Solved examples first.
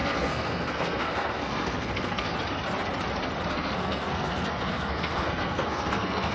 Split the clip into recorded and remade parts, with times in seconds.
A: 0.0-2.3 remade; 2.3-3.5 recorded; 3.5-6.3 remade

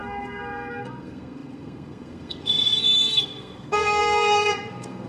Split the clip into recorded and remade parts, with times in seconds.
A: 0.0-5.1 remade